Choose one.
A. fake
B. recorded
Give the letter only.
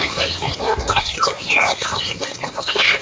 A